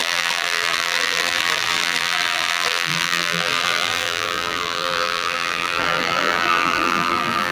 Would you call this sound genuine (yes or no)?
no